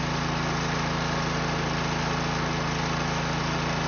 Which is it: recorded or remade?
recorded